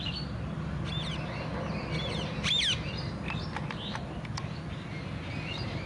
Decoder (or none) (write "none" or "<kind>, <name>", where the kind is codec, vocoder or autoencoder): none